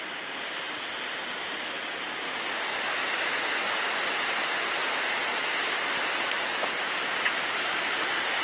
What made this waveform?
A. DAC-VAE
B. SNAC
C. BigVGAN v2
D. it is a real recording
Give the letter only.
D